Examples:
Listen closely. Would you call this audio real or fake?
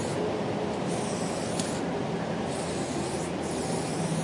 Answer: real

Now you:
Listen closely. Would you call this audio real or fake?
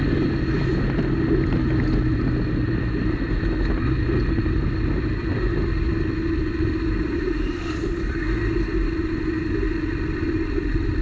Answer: real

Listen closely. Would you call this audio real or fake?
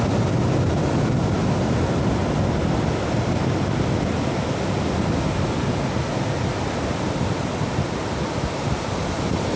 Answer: real